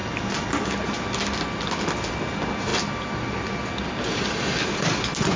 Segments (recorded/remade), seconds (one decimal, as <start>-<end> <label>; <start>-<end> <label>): 0.0-5.4 recorded